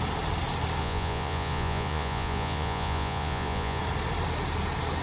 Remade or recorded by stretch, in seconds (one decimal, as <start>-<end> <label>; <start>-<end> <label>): 0.0-0.8 recorded; 0.8-3.8 remade; 3.8-5.0 recorded

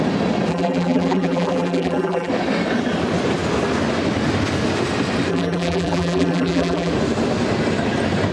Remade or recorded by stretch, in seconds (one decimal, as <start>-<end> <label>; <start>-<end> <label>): 0.0-0.5 recorded; 0.5-2.3 remade; 2.3-5.3 recorded; 5.3-6.9 remade; 6.9-8.3 recorded

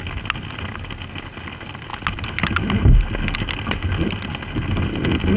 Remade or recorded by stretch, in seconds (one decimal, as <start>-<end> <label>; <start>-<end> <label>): 0.0-5.4 recorded

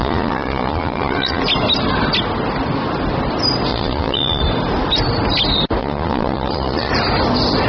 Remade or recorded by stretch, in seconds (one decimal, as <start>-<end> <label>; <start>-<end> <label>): 0.0-1.4 remade; 1.4-3.7 recorded; 3.7-4.4 remade; 4.4-5.8 recorded; 5.8-6.9 remade; 6.9-7.7 recorded